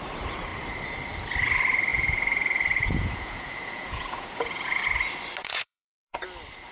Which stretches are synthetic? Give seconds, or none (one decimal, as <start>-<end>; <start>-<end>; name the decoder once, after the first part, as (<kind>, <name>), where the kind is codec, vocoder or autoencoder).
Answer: 1.9-4.8 (vocoder, Vocos); 5.4-6.2

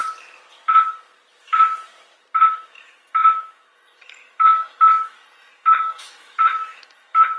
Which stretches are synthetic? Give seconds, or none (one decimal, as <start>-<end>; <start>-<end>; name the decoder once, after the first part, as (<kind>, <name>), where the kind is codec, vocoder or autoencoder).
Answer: 1.4-1.9 (autoencoder, DAC-VAE); 2.5-7.4

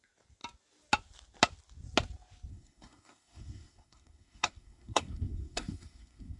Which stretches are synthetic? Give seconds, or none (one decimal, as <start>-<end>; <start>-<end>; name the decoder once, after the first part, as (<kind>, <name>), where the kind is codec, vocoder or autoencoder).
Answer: 2.5-6.4 (codec, SNAC)

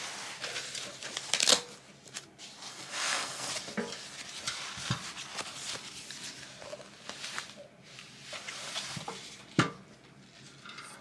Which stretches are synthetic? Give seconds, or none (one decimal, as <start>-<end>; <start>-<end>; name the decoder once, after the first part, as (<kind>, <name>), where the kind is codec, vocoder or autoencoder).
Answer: 2.7-3.5 (codec, SNAC)

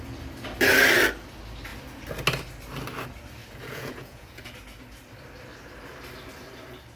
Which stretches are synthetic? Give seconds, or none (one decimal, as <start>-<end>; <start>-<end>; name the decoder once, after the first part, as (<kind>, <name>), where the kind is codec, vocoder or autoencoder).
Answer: 3.4-4.5 (vocoder, Vocos)

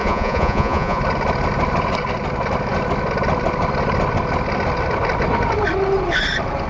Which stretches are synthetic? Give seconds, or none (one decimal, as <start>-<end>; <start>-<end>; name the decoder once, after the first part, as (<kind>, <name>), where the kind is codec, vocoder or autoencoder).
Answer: 0.0-1.0 (vocoder, Vocos)

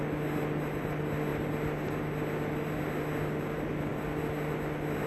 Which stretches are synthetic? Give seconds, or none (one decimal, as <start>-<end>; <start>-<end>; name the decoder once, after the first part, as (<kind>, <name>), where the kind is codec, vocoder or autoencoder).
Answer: none

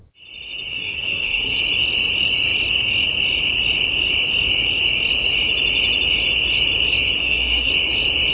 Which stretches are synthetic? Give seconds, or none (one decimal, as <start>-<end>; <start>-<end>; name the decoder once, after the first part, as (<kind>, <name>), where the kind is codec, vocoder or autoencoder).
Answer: 0.7-1.6 (codec, SNAC); 7.2-7.7